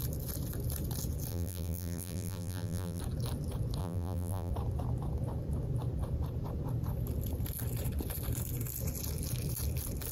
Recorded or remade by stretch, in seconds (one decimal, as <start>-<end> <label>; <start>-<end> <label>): 0.0-1.3 recorded; 1.3-3.0 remade; 3.0-3.8 recorded; 3.8-4.5 remade; 4.5-10.1 recorded